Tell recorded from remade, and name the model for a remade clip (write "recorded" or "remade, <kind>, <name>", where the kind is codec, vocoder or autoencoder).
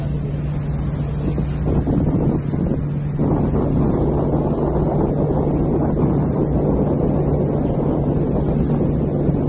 recorded